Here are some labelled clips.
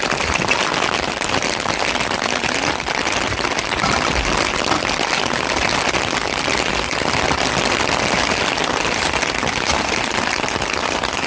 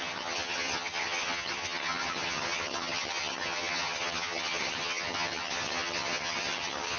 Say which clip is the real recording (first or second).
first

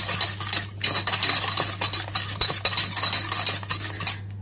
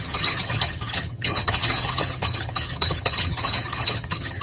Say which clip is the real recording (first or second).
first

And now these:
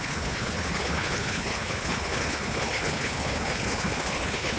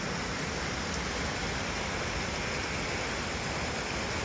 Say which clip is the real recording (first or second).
second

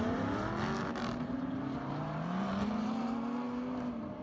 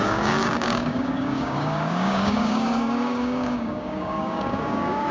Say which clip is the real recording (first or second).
first